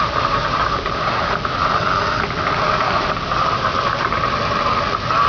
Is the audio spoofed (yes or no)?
no